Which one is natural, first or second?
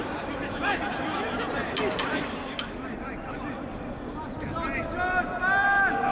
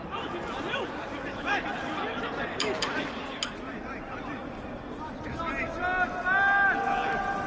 second